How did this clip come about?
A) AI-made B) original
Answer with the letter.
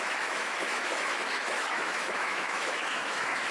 A